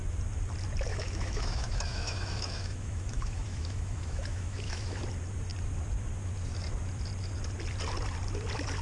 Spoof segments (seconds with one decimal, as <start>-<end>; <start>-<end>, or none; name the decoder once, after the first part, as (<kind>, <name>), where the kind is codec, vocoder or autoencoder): 0.9-5.0 (autoencoder, DAC-VAE)